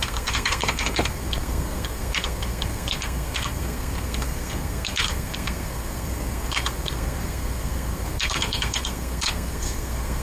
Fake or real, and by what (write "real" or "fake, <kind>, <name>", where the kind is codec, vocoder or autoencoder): fake, codec, SNAC